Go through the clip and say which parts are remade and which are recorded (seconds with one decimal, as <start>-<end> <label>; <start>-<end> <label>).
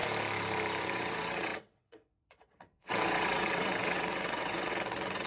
0.0-0.8 recorded; 0.8-5.3 remade